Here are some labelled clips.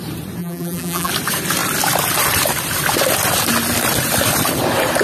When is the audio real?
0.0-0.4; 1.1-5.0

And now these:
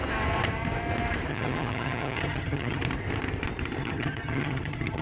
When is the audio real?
0.0-1.3; 2.8-3.8

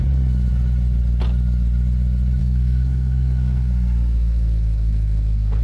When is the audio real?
0.0-2.4

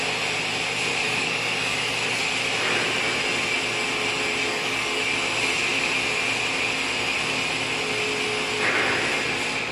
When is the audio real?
0.0-0.9; 2.2-4.4; 5.0-9.7

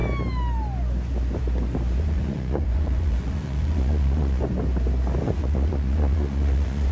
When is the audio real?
0.0-2.0; 4.4-5.2

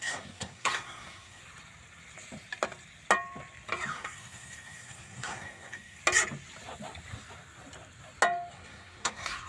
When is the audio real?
1.4-3.9; 6.0-8.5

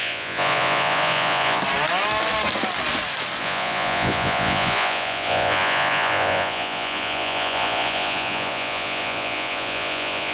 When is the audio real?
1.6-3.4